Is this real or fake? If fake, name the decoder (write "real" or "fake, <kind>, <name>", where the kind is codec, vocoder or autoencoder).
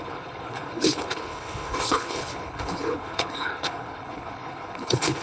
fake, codec, HILCodec